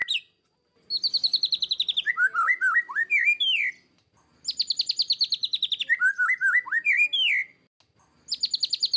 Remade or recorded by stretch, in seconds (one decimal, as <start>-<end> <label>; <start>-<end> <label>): 0.0-9.0 recorded